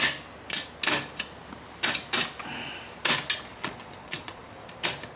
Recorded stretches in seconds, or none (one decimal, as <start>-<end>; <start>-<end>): 0.0-3.5; 4.4-5.2